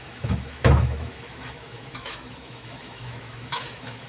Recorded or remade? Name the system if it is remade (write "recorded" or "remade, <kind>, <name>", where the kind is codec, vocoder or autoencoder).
remade, autoencoder, DAC-VAE